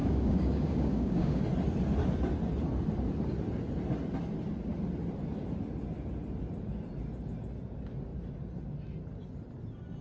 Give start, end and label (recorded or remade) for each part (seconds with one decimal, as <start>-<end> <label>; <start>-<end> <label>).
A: 0.0-1.4 remade; 1.4-10.0 recorded